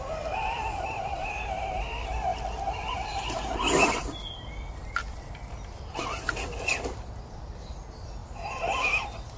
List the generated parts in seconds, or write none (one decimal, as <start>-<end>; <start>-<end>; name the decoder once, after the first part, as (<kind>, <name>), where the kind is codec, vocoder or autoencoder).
none